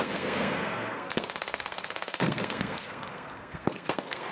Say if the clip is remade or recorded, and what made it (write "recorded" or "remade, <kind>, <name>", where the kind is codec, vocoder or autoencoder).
remade, codec, SNAC